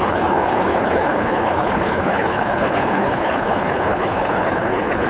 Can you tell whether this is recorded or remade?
remade